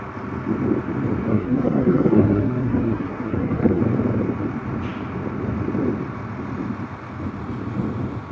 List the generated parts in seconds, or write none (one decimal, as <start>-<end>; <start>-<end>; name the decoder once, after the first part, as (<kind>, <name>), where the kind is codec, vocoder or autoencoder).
1.3-3.8 (codec, SNAC)